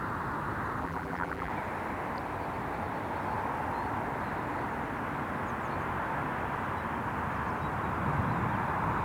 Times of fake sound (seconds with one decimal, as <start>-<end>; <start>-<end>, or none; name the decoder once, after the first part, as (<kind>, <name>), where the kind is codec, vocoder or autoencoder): 0.8-1.5 (vocoder, BigVGAN v2)